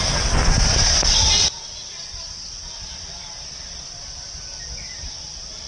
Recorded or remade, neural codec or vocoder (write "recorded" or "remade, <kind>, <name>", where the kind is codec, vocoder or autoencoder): recorded